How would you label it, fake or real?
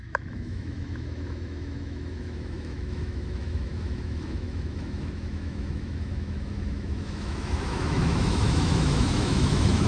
fake